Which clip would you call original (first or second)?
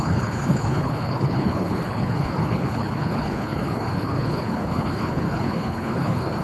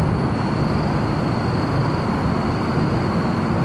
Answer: second